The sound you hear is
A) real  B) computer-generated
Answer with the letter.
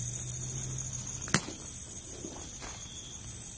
A